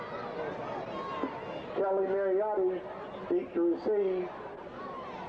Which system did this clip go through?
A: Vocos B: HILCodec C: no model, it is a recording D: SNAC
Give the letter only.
C